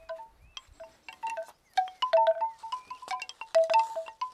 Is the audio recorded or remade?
recorded